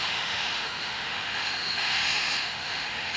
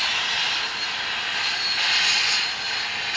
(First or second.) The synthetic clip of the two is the first